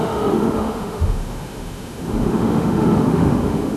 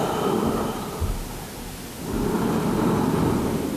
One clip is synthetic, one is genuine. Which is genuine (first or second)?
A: second